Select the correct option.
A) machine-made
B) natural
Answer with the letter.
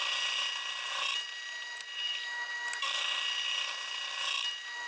B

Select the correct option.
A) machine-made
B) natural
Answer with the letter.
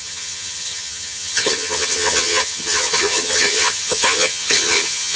A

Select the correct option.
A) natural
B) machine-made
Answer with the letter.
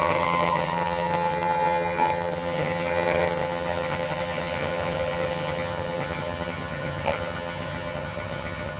B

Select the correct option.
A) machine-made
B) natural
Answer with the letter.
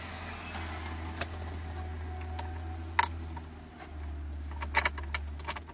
B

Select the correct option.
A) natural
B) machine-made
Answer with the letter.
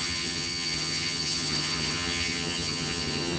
B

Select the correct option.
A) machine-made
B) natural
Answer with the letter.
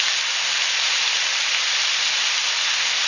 B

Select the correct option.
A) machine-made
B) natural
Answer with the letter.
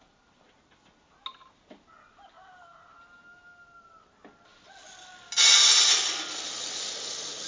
B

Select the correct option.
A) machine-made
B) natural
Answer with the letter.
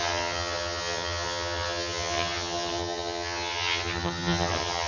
A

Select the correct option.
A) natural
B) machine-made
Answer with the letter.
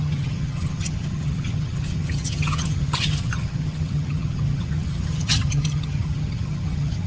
B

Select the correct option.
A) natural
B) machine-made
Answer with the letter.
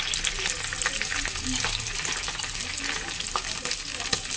A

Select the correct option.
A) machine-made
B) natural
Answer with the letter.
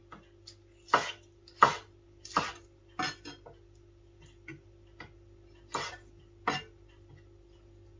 B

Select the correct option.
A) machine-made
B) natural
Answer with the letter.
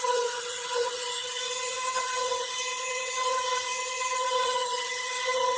A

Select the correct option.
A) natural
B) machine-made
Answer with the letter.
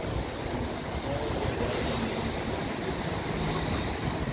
A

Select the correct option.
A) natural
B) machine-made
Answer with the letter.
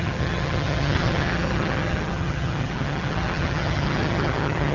B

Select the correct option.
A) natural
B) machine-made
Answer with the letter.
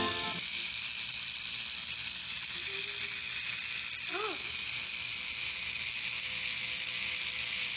A